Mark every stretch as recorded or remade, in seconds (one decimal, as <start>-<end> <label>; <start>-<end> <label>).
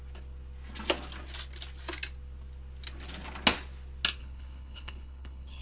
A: 0.0-4.2 recorded; 4.2-5.6 remade